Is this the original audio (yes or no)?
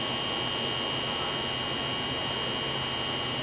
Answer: yes